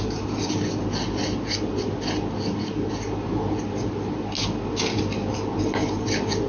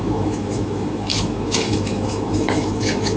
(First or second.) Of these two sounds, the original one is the first